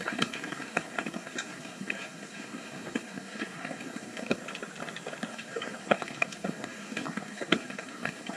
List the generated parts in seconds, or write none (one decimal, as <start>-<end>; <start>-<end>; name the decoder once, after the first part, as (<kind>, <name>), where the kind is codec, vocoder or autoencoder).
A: 0.0-4.4 (codec, SNAC); 5.3-8.4